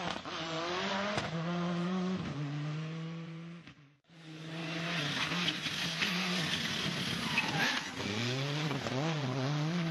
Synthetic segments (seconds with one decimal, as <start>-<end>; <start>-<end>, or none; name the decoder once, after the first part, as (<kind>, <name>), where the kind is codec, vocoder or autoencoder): 0.0-4.6 (vocoder, Vocos); 7.2-9.9